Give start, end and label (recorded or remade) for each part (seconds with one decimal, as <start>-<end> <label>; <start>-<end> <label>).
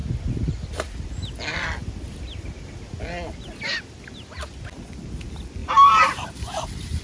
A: 0.0-1.5 recorded; 1.5-2.2 remade; 2.2-5.6 recorded; 5.6-6.3 remade; 6.3-7.0 recorded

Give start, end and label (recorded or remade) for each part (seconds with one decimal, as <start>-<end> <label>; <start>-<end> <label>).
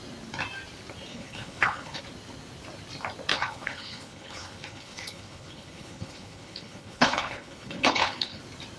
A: 0.0-1.1 recorded; 1.1-2.0 remade; 2.0-3.3 recorded; 3.3-8.4 remade; 8.4-8.8 recorded